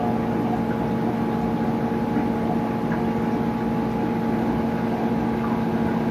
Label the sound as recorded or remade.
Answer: recorded